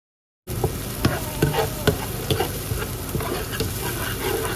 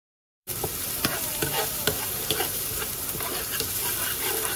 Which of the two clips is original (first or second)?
first